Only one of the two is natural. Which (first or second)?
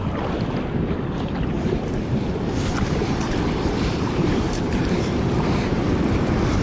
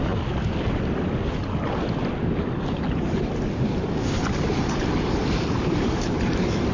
second